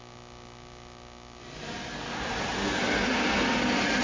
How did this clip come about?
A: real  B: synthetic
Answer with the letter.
A